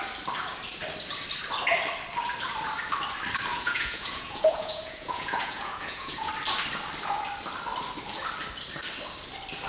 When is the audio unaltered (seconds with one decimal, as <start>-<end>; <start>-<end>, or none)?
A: 0.0-3.5; 6.3-9.7